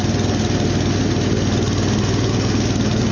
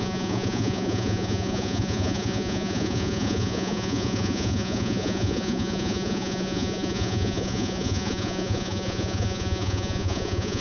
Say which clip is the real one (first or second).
first